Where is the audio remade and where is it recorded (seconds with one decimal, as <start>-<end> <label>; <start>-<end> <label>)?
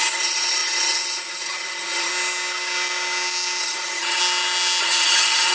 0.0-2.1 remade; 2.1-3.6 recorded; 3.6-4.2 remade; 4.2-4.8 recorded; 4.8-5.5 remade